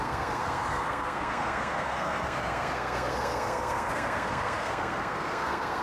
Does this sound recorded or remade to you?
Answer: remade